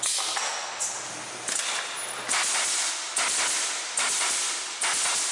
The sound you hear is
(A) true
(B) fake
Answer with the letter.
A